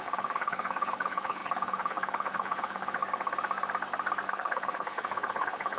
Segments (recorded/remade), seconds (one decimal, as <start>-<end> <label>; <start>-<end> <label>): 0.0-3.0 remade; 3.0-4.3 recorded; 4.3-5.8 remade